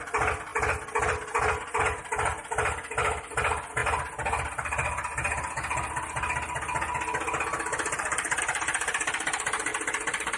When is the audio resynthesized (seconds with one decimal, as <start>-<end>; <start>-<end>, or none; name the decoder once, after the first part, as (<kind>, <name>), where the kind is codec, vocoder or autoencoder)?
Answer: 9.7-10.4 (vocoder, BigVGAN v2)